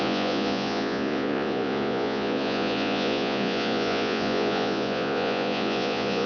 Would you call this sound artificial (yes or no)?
yes